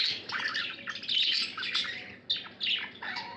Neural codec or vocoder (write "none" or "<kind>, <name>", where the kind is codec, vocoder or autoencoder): none